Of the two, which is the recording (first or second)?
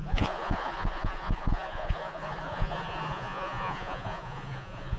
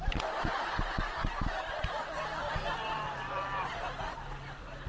second